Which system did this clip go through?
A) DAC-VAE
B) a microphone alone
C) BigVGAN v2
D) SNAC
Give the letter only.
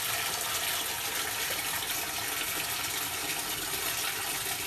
B